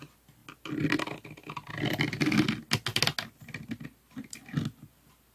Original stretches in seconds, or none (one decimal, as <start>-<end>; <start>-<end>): 0.0-5.3